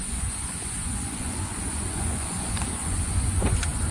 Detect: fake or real fake